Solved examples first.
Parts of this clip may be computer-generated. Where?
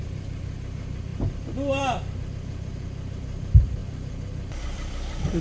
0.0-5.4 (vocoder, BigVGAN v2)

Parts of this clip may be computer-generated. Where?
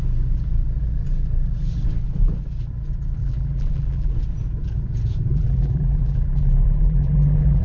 3.2-4.1 (vocoder, BigVGAN v2); 5.3-7.6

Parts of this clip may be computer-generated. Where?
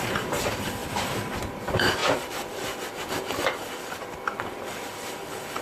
0.0-0.8 (vocoder, BigVGAN v2); 1.4-5.6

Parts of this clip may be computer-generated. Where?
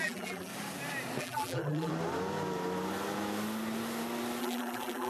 0.0-0.5 (vocoder, BigVGAN v2); 1.2-1.9; 4.4-5.1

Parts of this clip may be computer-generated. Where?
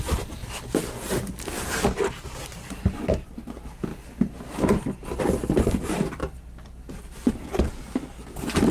none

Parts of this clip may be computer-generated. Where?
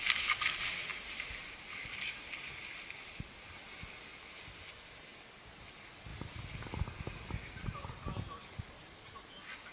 7.6-8.6 (vocoder, BigVGAN v2)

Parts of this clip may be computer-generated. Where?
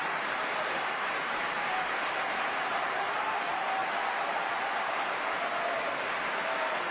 0.0-3.8 (vocoder, BigVGAN v2); 4.3-5.5